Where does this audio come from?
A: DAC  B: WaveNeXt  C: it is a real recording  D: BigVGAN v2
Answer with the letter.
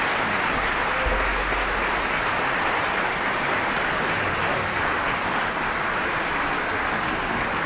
C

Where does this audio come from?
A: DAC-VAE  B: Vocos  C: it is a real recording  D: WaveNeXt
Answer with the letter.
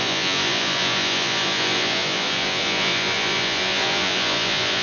B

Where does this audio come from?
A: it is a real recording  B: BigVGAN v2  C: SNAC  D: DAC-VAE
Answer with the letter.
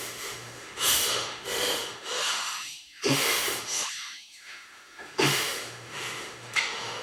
D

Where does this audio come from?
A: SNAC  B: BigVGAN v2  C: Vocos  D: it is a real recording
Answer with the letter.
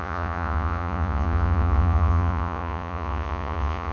C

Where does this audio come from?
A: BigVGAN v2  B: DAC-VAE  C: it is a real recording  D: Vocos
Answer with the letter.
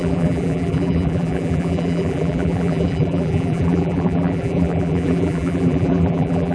A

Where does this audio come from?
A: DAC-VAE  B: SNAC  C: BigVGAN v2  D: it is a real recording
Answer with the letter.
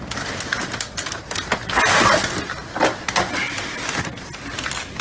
D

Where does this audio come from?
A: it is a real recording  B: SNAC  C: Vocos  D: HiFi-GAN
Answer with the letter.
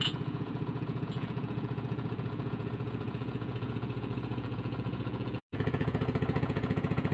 C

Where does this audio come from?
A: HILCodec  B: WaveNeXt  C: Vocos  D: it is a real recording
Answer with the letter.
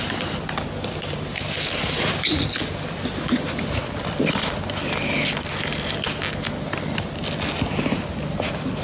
D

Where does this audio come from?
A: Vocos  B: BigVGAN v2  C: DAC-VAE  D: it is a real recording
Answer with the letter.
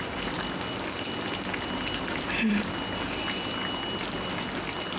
D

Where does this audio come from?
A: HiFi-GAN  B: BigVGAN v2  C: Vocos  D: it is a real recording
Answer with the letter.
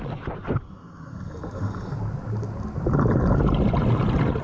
D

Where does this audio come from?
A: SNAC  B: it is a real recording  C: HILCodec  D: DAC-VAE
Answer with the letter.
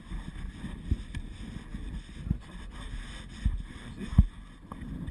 B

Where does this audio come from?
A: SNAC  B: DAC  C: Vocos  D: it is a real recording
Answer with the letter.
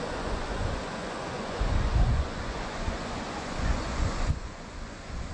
C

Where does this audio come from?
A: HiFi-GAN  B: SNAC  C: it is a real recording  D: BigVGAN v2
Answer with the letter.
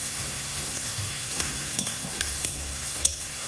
B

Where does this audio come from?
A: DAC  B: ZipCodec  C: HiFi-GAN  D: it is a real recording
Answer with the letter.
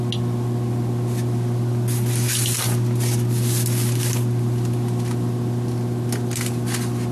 D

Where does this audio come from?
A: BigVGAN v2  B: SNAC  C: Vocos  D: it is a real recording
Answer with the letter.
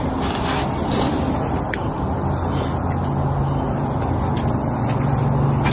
D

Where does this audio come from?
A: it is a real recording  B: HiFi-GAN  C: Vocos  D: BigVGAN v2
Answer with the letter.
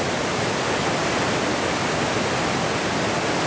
A